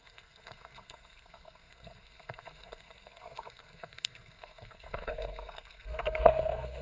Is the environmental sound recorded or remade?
remade